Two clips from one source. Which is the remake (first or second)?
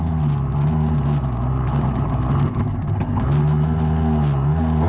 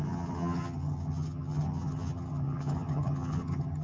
second